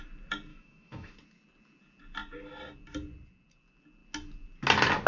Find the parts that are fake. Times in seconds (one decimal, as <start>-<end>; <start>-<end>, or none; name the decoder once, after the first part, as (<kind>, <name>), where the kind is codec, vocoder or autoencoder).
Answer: 0.5-1.1 (autoencoder, DAC-VAE)